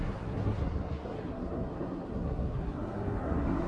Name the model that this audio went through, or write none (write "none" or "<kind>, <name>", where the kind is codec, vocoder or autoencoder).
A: codec, SNAC